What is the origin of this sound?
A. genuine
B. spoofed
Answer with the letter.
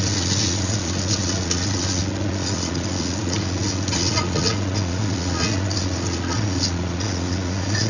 B